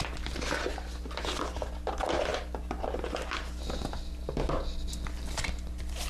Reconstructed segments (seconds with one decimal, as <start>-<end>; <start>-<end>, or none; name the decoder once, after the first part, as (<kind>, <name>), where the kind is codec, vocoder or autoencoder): none